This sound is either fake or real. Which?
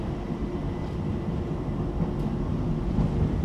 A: real